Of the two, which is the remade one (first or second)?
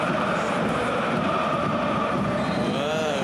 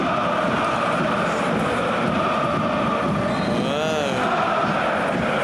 first